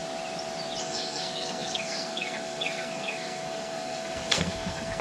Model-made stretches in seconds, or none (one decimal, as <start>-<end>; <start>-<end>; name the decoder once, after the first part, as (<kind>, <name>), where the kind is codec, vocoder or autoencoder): 0.8-5.0 (codec, SNAC)